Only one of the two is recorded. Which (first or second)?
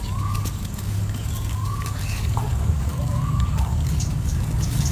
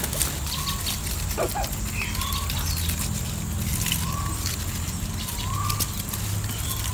second